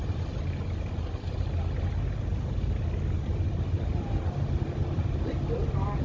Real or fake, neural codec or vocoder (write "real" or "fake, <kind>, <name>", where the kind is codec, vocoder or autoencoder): real